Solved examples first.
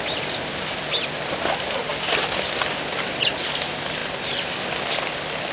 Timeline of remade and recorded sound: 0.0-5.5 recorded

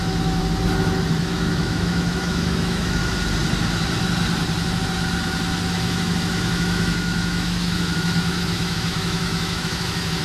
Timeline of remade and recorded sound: 0.0-0.4 remade; 0.4-1.2 recorded; 1.2-3.0 remade; 3.0-5.8 recorded; 5.8-10.2 remade

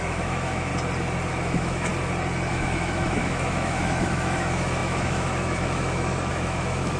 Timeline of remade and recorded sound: 0.0-0.7 remade; 0.7-1.3 recorded; 1.3-1.9 remade; 1.9-2.5 recorded; 2.5-7.0 remade